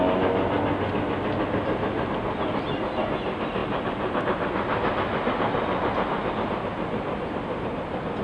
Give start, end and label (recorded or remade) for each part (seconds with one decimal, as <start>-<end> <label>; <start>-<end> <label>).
0.0-8.2 recorded